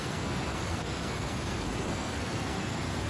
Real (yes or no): no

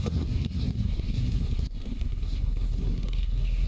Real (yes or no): no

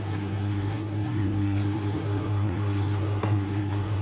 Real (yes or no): no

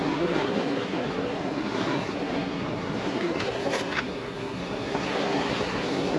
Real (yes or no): no